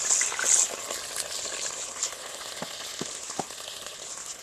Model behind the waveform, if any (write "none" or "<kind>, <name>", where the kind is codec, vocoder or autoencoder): none